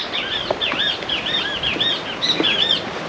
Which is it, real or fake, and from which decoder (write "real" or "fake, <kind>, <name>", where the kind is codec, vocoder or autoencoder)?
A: real